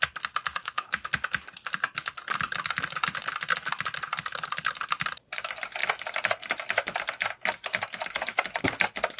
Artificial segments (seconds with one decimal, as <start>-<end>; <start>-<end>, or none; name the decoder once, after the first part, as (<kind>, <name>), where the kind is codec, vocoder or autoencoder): 0.6-1.1 (autoencoder, DAC-VAE)